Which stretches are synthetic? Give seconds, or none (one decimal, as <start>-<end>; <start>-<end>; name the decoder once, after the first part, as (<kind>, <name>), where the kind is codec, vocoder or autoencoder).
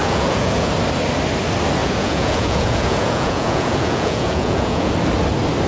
0.0-0.7 (vocoder, Vocos); 1.8-4.9